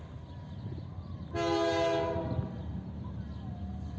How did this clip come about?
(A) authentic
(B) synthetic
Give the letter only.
A